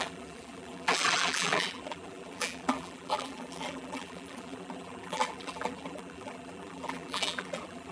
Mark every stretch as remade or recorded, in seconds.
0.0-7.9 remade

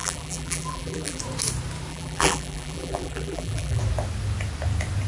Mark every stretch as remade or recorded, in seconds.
0.0-1.2 remade; 1.2-1.9 recorded; 1.9-3.8 remade; 3.8-5.1 recorded

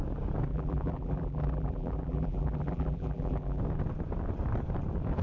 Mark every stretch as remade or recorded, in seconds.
0.0-0.5 recorded; 0.5-3.6 remade; 3.6-5.2 recorded

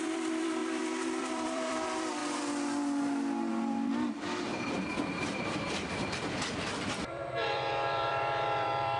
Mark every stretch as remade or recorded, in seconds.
0.0-2.2 remade; 2.2-3.5 recorded; 3.5-9.0 remade